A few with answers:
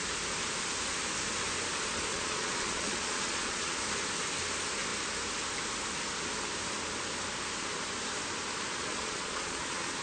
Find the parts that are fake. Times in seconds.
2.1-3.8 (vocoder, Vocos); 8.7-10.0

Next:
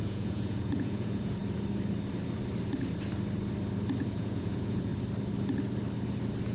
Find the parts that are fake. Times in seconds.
0.0-1.4 (vocoder, Vocos); 4.1-4.9